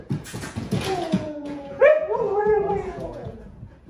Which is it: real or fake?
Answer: fake